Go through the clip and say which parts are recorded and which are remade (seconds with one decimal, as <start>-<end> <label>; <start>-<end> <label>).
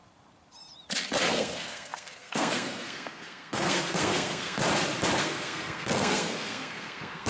0.0-1.3 recorded; 1.3-4.6 remade; 4.6-5.2 recorded; 5.2-7.3 remade